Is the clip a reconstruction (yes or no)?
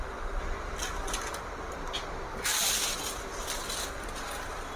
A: no